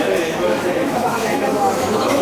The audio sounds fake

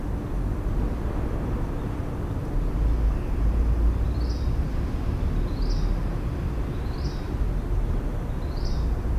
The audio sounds real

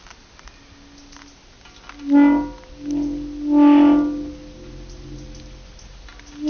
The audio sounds real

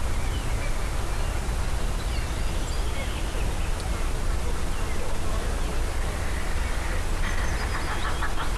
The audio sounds real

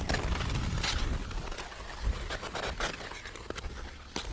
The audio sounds real